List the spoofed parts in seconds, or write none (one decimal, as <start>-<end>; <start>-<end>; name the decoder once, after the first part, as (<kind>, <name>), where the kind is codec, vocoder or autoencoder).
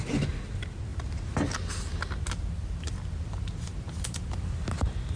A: none